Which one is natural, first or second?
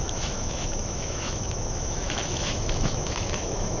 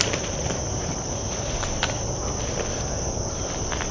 second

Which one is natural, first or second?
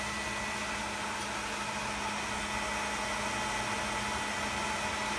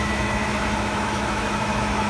first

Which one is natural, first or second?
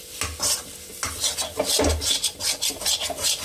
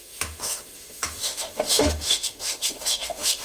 first